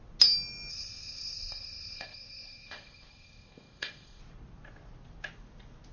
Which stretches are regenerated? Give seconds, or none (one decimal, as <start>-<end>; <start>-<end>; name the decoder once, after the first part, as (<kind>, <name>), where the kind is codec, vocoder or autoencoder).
0.7-4.2 (codec, ZipCodec)